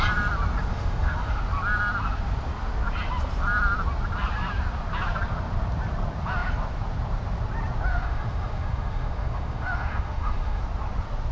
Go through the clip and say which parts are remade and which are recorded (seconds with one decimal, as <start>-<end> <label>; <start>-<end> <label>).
0.0-0.7 recorded; 0.7-1.4 remade; 1.4-7.9 recorded; 7.9-10.6 remade; 10.6-11.3 recorded